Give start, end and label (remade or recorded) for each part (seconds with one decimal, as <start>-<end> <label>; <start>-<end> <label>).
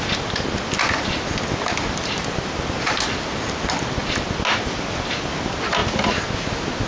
0.0-6.9 recorded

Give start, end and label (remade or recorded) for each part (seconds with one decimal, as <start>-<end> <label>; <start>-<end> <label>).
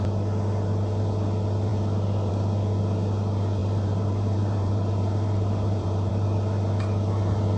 0.0-3.6 recorded; 3.6-6.1 remade; 6.1-7.6 recorded